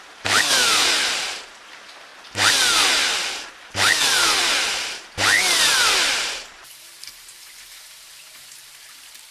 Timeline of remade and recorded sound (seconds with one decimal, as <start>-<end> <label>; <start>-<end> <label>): 0.0-2.1 remade; 2.1-2.9 recorded; 2.9-9.3 remade

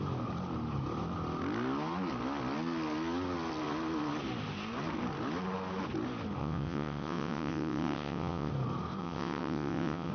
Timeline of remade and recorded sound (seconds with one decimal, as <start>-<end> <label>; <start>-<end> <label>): 0.0-6.4 recorded; 6.4-8.5 remade; 8.5-9.0 recorded; 9.0-10.1 remade

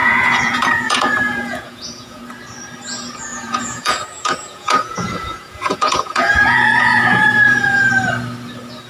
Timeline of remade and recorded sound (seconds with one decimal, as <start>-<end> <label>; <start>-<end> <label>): 0.0-2.2 remade; 2.2-3.3 recorded; 3.3-7.9 remade; 7.9-8.9 recorded